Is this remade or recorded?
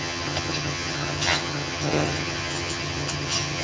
remade